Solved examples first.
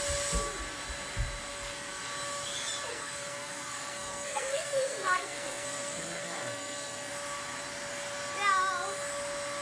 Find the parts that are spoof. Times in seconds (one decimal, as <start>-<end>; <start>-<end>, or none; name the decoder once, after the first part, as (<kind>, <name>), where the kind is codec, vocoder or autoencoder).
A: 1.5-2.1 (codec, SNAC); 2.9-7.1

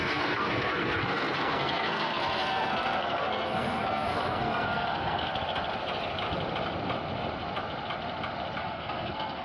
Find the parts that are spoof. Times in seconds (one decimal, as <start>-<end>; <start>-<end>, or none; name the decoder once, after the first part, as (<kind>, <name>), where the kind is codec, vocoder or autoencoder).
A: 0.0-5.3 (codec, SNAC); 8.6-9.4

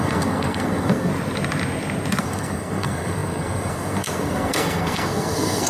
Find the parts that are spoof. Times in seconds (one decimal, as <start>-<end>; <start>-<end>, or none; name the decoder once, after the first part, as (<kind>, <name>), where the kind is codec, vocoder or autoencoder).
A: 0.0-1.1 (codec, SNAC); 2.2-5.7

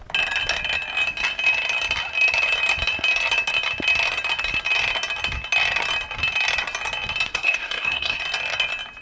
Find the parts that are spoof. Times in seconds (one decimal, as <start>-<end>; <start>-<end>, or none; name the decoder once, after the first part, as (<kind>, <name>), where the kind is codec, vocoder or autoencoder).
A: 7.3-8.2 (codec, SNAC)